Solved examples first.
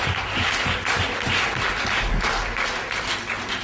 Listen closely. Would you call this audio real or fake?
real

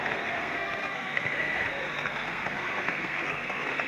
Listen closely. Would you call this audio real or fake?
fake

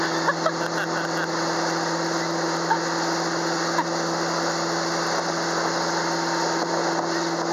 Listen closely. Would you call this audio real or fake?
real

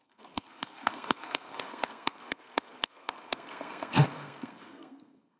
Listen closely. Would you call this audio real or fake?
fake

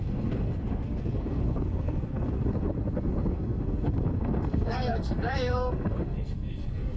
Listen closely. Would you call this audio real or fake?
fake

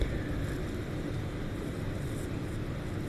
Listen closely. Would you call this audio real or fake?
real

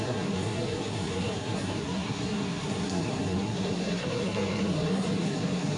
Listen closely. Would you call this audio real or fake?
fake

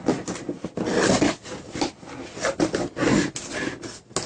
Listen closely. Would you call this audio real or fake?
real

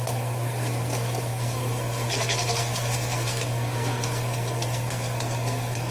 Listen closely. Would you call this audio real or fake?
fake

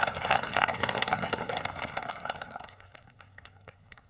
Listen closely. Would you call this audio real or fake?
fake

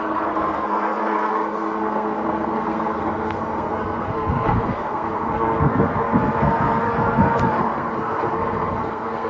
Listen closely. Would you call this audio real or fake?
fake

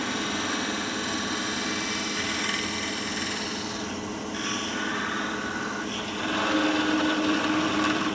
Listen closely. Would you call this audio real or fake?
real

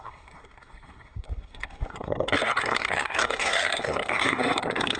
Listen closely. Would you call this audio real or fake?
fake